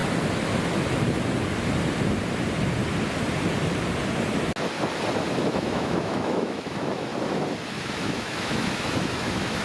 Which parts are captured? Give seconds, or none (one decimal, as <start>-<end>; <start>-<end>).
0.0-5.3; 7.1-7.7